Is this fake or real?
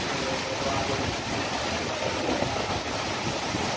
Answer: real